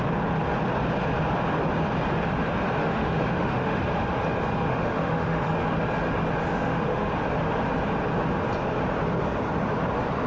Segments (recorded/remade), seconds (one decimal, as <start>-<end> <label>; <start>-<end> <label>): 0.0-2.8 recorded; 2.8-3.8 remade; 3.8-4.7 recorded; 4.7-5.5 remade; 5.5-6.5 recorded; 6.5-7.1 remade; 7.1-10.3 recorded